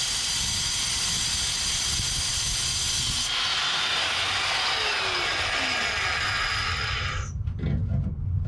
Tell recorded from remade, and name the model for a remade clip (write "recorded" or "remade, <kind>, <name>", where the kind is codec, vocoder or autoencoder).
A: recorded